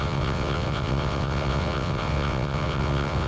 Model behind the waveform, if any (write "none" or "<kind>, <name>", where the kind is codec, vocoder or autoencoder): vocoder, WaveNeXt